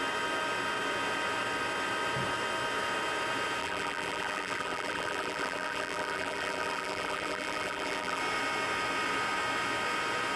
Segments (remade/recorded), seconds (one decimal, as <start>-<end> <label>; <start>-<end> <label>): 0.0-3.6 recorded; 3.6-8.2 remade; 8.2-10.4 recorded